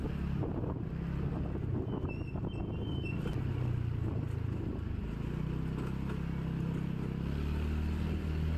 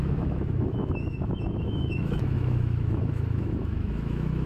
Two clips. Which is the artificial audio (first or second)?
second